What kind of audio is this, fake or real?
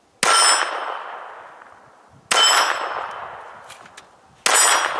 real